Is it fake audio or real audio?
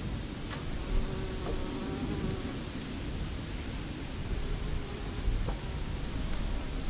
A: real